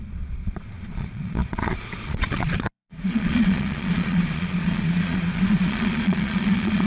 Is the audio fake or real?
fake